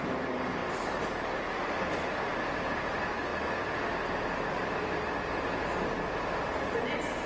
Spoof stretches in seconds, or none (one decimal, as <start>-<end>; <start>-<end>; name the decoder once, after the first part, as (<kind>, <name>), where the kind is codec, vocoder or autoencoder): none